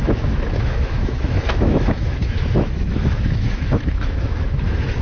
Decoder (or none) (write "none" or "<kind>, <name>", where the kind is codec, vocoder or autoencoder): autoencoder, DAC-VAE